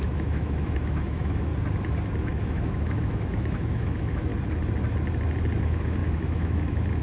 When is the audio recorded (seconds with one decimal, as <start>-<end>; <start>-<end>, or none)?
1.5-2.2; 4.3-5.6